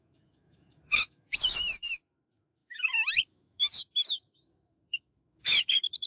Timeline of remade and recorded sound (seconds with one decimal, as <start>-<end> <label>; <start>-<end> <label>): 0.0-6.1 remade